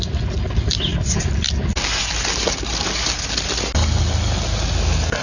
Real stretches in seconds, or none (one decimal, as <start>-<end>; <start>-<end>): 0.0-5.2